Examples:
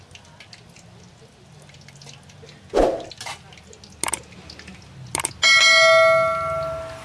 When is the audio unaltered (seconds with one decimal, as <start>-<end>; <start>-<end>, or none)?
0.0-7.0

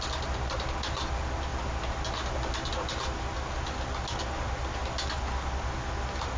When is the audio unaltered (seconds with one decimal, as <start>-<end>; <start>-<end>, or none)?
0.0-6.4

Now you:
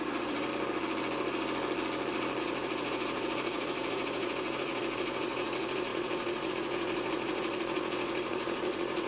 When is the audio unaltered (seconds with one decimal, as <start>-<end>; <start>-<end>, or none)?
0.5-2.4

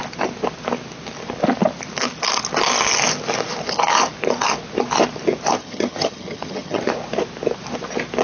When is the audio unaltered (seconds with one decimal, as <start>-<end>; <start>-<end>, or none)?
0.0-5.6; 6.8-8.2

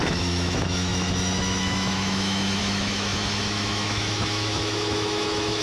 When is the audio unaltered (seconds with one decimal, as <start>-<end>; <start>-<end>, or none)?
none

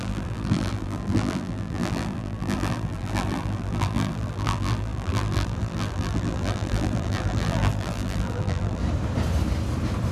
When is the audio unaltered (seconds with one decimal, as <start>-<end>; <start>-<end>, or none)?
8.8-10.1